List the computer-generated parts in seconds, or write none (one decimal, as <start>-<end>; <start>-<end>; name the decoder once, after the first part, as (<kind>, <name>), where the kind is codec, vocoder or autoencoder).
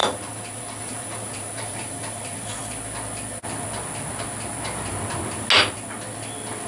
0.0-2.6 (vocoder, BigVGAN v2)